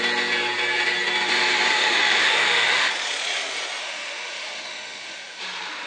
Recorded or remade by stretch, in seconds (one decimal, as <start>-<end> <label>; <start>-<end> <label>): 0.0-1.7 recorded; 1.7-2.9 remade; 2.9-3.8 recorded; 3.8-5.4 remade; 5.4-5.9 recorded

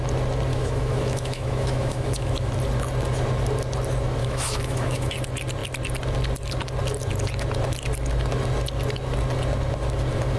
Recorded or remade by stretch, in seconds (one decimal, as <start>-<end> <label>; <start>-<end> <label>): 0.0-0.5 recorded; 0.5-2.5 remade; 2.5-4.2 recorded; 4.2-5.1 remade; 5.1-10.4 recorded

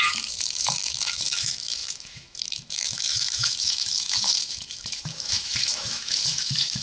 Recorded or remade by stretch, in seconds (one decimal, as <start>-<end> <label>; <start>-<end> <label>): 0.0-6.8 remade

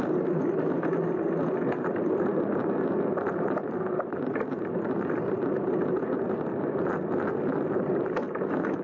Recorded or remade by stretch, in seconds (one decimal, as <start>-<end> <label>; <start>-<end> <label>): 0.0-8.8 recorded

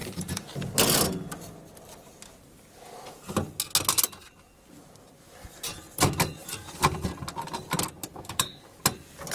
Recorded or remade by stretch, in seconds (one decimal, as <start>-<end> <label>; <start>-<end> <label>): 0.0-8.1 recorded; 8.1-8.8 remade; 8.8-9.3 recorded

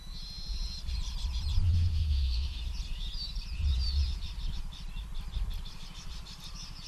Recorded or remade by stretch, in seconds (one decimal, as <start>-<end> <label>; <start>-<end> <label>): 0.0-1.7 recorded; 1.7-2.6 remade; 2.6-6.9 recorded